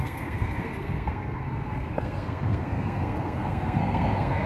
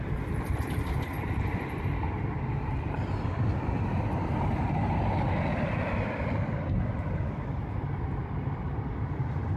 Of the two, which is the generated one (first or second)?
first